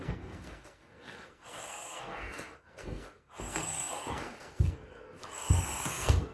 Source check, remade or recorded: remade